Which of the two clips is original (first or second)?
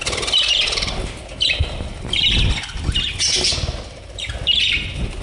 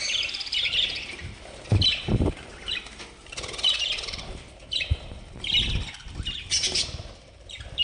first